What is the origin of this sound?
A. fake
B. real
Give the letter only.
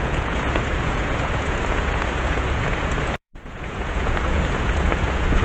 A